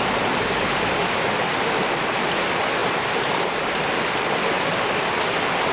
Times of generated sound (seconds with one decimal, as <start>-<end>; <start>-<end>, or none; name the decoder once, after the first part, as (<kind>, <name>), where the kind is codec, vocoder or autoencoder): none